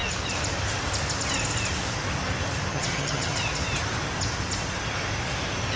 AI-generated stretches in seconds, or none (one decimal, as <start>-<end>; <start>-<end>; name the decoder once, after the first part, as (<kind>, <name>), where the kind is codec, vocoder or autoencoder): 2.7-3.3 (vocoder, HiFi-GAN)